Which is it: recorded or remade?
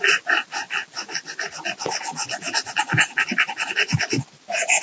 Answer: recorded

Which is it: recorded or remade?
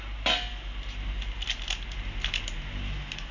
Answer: recorded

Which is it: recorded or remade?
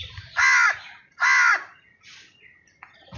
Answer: recorded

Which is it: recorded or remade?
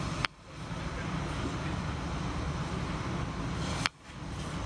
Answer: recorded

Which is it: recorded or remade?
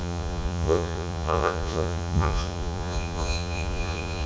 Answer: remade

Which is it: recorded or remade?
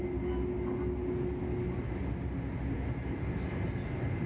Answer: recorded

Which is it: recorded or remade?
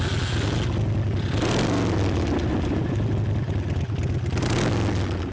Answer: recorded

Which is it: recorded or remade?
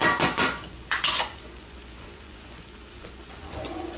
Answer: remade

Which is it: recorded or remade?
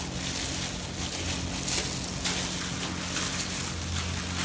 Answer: recorded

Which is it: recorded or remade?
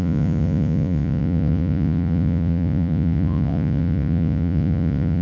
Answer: remade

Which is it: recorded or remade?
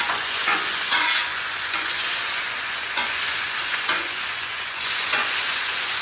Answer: remade